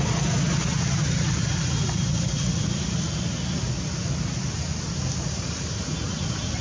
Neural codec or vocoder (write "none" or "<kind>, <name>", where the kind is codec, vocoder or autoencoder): none